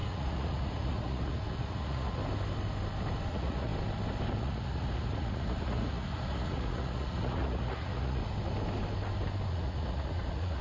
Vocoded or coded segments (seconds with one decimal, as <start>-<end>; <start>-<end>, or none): 0.0-2.2; 3.3-3.7; 4.4-8.2; 9.5-10.6